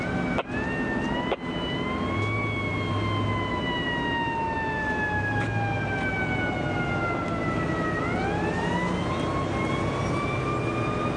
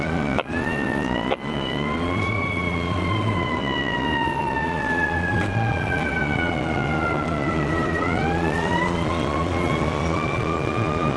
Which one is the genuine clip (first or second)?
first